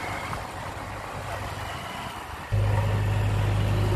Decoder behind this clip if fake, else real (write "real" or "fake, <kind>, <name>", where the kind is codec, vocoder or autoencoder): real